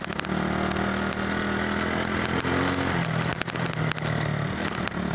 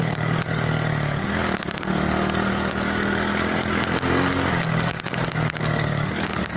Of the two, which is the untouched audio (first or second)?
first